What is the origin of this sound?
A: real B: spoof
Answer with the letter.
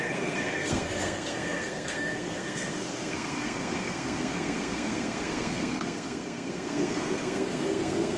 B